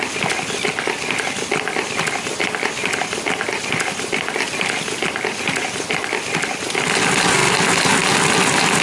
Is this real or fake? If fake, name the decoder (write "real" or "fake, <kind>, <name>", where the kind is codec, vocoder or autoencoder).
real